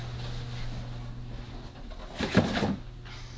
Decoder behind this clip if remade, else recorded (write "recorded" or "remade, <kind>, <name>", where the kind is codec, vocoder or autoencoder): recorded